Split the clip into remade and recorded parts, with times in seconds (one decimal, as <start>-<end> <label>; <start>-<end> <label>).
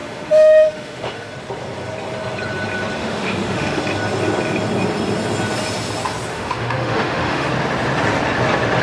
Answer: 0.0-1.3 remade; 1.3-3.0 recorded; 3.0-3.8 remade; 3.8-6.3 recorded; 6.3-7.5 remade; 7.5-8.8 recorded